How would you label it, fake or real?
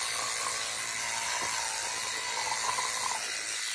fake